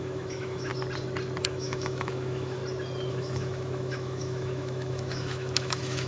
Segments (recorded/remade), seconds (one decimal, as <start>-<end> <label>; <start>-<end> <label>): 0.0-0.7 remade; 0.7-1.4 recorded; 1.4-2.6 remade; 2.6-3.1 recorded; 3.1-6.1 remade